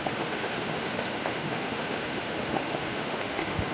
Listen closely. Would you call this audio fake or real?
fake